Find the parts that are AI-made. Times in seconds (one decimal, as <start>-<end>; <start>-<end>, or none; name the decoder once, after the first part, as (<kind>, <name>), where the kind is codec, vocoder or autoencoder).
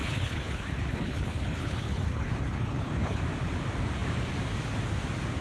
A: 0.0-3.2 (codec, HILCodec)